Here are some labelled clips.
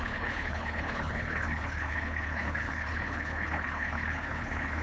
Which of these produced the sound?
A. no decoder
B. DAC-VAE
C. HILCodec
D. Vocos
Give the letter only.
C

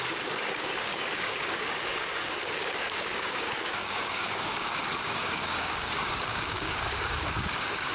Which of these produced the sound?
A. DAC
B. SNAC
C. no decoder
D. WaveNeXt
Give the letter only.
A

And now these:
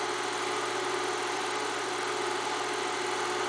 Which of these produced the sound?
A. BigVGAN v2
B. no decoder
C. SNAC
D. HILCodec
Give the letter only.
B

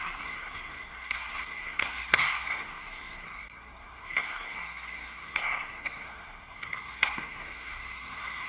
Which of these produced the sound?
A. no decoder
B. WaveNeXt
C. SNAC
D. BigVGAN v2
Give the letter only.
C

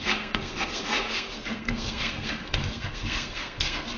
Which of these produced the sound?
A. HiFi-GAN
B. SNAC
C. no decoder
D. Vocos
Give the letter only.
B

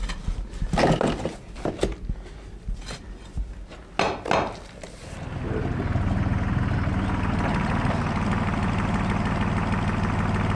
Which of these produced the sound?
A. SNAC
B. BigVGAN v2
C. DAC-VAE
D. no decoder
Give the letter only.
D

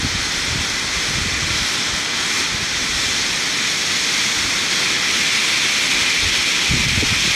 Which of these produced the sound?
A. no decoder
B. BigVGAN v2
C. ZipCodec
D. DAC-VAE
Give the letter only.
A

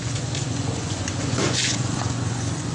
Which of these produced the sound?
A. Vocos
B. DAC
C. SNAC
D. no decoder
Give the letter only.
A